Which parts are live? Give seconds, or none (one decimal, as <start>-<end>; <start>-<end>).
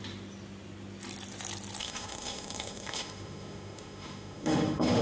0.0-1.8